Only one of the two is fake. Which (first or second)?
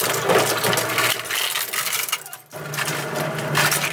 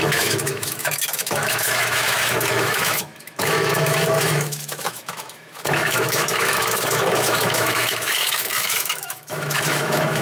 second